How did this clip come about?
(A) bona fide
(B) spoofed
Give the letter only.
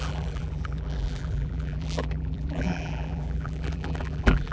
B